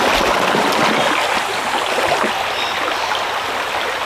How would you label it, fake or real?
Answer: real